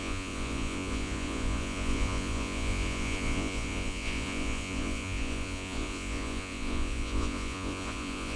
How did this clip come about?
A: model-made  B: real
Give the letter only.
A